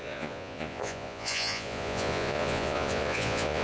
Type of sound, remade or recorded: remade